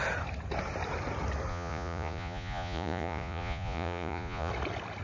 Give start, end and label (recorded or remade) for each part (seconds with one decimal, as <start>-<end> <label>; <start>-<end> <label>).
0.0-1.5 recorded; 1.5-4.5 remade; 4.5-5.0 recorded

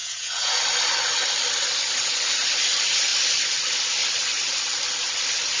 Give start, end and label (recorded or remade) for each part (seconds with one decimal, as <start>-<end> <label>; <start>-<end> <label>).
0.0-0.6 remade; 0.6-5.6 recorded